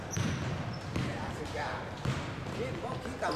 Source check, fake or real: real